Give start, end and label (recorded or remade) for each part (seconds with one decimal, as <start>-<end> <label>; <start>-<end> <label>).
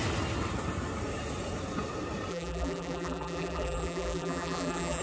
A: 0.0-2.3 recorded; 2.3-5.0 remade